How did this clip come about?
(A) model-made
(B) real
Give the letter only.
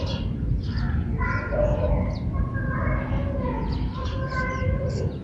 B